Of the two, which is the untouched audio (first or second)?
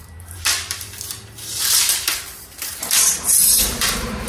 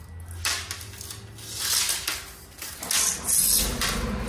second